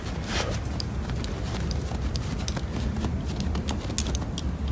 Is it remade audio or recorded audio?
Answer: recorded